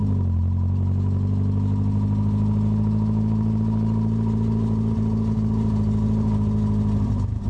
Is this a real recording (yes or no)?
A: yes